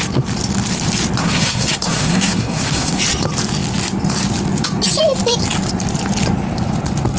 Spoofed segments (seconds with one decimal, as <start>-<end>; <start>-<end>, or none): 1.2-3.0